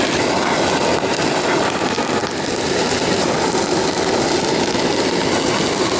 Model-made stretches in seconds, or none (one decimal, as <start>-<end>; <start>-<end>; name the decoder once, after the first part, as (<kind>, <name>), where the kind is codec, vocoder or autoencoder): none